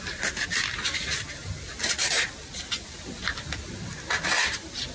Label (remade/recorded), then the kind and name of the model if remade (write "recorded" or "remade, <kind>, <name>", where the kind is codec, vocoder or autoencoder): recorded